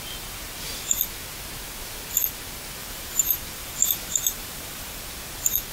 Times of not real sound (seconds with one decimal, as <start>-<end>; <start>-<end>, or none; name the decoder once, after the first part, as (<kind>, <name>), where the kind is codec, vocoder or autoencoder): 2.8-5.0 (vocoder, BigVGAN v2)